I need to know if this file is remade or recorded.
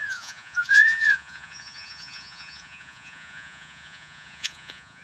remade